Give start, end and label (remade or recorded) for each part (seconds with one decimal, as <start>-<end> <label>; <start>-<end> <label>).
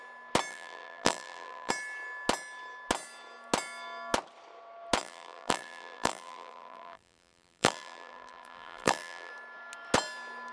0.0-0.5 recorded; 0.5-1.7 remade; 1.7-5.0 recorded; 5.0-9.3 remade; 9.3-10.5 recorded